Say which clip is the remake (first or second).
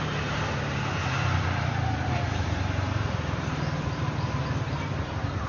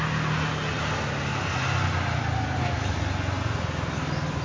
first